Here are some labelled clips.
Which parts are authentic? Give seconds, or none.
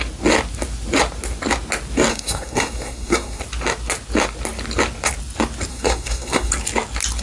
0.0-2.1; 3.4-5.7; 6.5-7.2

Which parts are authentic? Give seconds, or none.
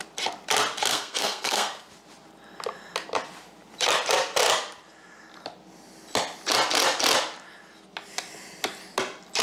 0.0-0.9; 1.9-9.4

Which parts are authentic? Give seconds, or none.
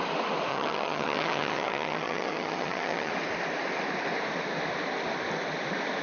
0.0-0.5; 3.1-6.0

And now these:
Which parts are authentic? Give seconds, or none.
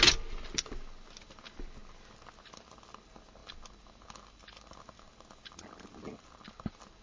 0.0-7.0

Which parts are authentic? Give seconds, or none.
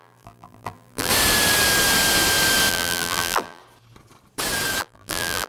1.1-2.7; 3.6-4.8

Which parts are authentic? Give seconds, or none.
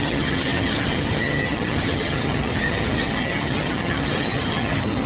none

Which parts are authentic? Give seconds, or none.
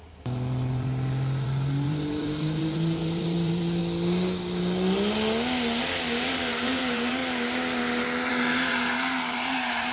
3.8-5.8; 7.2-8.3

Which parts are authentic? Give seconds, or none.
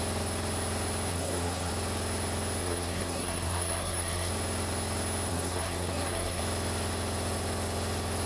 0.0-1.1; 1.7-2.6; 4.3-5.3; 6.4-8.3